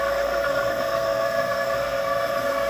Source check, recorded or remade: remade